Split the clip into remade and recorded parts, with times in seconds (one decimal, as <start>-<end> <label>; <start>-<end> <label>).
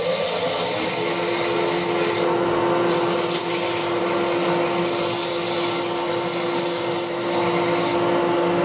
0.0-8.6 recorded